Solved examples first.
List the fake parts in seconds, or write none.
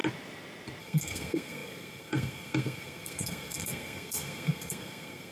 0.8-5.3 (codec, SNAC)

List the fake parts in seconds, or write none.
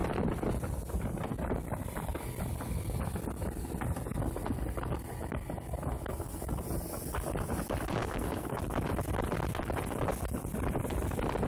8.0-8.6 (codec, SNAC)